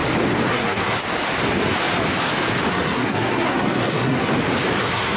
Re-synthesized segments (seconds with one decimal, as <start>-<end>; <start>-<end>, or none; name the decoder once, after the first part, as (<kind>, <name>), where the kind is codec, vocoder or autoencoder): 0.5-1.0 (codec, SNAC); 2.7-4.3; 4.8-5.2